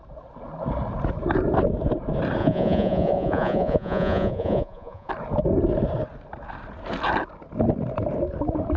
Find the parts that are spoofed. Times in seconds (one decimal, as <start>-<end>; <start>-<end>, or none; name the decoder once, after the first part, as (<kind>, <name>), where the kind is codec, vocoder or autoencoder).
2.4-5.1 (vocoder, Vocos)

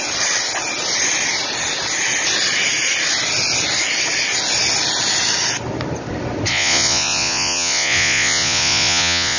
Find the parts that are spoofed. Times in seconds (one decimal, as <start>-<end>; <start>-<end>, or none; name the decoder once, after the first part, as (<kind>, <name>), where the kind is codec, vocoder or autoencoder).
6.5-9.4 (vocoder, Vocos)

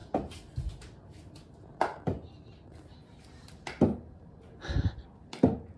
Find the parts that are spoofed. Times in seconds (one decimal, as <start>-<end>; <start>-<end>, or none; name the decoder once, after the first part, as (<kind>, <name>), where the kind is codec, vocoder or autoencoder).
none

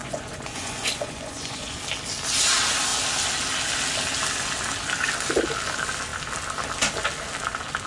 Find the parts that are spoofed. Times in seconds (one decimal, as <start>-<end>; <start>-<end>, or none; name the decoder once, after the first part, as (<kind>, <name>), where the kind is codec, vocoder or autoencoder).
0.0-1.8 (vocoder, Vocos)

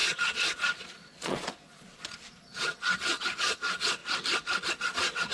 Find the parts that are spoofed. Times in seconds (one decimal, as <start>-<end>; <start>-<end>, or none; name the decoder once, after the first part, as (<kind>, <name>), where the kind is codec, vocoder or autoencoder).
0.0-4.0 (vocoder, Vocos); 4.7-5.3

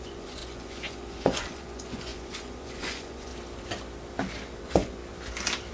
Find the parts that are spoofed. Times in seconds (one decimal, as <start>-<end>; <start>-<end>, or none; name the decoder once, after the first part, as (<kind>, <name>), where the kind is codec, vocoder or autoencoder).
0.0-3.3 (vocoder, Vocos); 4.6-5.0

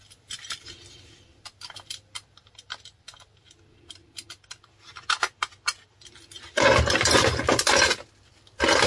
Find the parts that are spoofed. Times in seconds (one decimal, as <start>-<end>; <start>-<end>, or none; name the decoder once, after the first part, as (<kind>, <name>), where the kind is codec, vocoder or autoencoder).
none